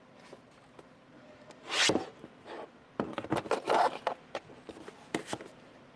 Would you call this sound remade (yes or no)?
no